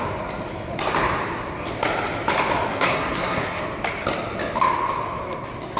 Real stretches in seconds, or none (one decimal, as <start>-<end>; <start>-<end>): 0.0-2.7; 3.6-5.8